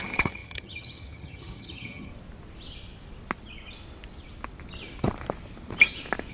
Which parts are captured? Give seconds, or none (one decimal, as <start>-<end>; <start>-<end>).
2.1-6.3